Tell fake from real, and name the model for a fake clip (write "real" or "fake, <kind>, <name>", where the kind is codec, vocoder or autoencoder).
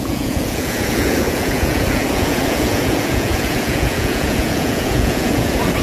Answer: fake, vocoder, Vocos